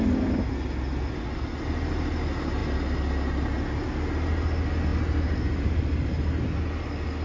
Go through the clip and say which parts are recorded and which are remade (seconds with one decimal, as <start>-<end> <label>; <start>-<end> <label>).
0.0-7.2 recorded